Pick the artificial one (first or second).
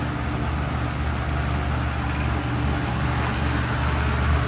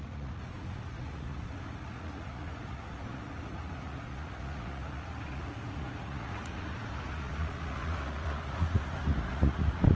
second